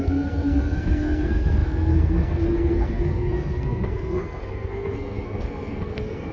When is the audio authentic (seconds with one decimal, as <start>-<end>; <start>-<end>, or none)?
none